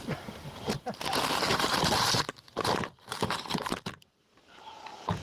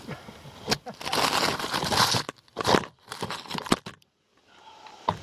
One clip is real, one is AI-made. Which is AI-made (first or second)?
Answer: first